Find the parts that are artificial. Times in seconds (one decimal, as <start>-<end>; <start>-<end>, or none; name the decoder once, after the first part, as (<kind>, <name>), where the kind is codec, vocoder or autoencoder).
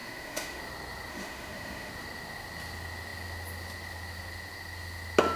0.0-0.6 (autoencoder, DAC-VAE); 1.1-1.9